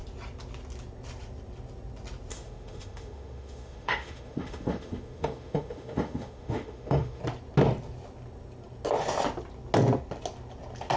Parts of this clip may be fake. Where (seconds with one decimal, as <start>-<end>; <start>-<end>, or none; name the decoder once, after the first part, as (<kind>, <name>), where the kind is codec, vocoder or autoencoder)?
2.3-7.2 (autoencoder, DAC-VAE)